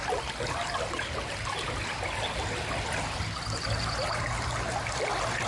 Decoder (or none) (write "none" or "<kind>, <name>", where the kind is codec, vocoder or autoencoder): none